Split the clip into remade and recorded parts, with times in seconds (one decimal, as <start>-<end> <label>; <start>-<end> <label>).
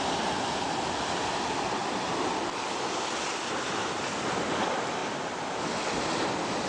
0.0-6.7 recorded